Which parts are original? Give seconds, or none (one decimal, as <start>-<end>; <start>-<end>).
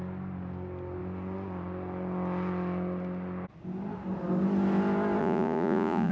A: 0.0-5.2